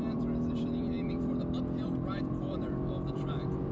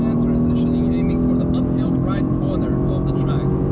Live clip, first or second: second